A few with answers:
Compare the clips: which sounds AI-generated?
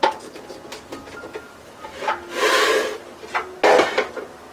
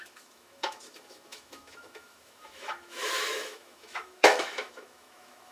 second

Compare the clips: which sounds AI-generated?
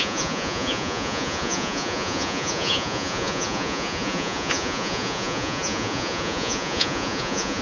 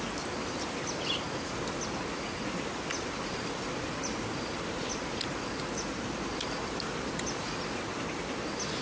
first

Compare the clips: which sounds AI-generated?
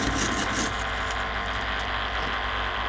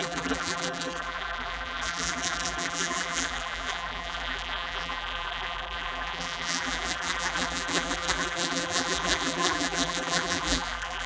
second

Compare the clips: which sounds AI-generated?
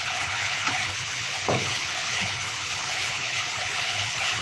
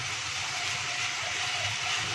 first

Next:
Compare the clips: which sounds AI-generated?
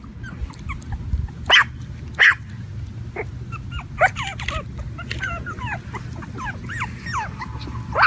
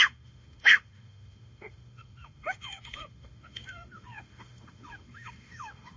second